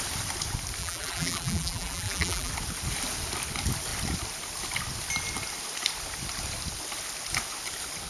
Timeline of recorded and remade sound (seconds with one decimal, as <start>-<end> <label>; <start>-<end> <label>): 0.0-0.8 recorded; 0.8-2.5 remade; 2.5-8.1 recorded